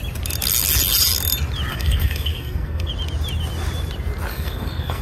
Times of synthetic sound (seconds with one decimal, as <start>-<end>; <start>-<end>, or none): 1.7-2.9; 4.3-5.0